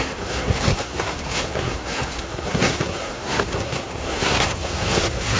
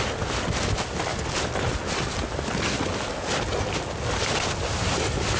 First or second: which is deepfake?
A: first